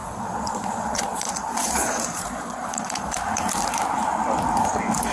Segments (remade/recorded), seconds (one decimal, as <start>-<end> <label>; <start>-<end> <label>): 0.0-3.1 remade; 3.1-5.1 recorded